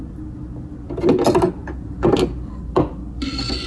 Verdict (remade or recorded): recorded